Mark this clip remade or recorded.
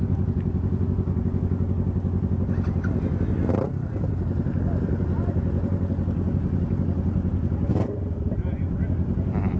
recorded